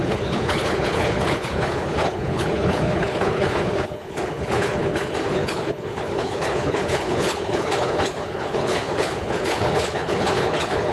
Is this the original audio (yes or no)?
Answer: no